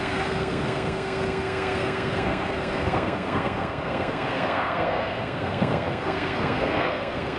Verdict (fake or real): fake